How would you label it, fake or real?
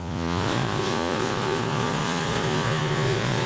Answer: fake